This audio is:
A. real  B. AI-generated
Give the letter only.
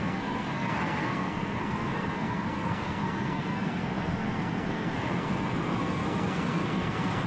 B